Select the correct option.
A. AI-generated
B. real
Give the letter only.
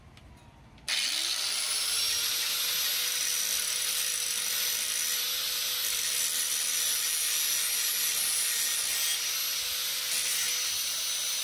B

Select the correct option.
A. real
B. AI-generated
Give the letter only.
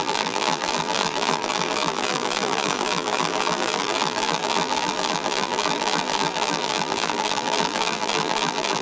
B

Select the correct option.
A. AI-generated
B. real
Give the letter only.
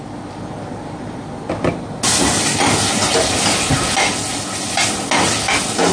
B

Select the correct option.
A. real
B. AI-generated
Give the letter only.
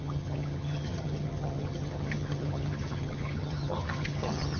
B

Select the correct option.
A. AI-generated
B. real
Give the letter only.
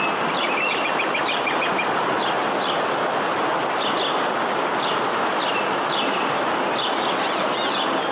B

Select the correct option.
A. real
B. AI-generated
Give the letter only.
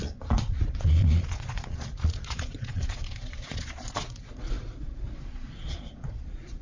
B